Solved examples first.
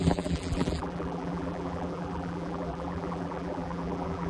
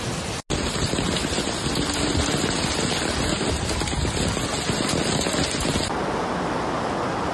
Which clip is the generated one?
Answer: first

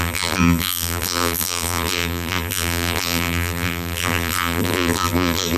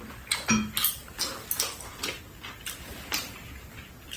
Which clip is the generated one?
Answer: first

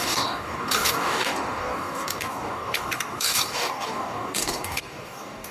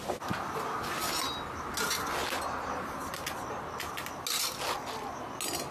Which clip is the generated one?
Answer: first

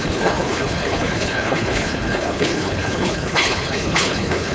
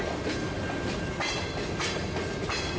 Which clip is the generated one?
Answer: first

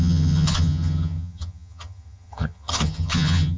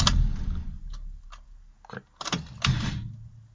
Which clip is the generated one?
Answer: first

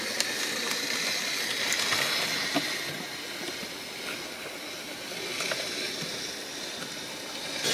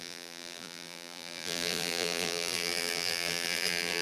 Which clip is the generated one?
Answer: second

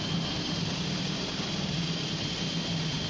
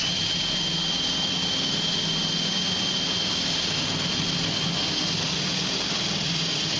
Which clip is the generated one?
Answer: first